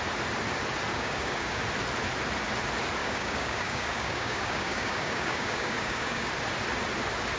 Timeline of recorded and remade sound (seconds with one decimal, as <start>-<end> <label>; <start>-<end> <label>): 0.0-0.9 recorded; 0.9-1.6 remade; 1.6-3.0 recorded; 3.0-6.3 remade; 6.3-7.4 recorded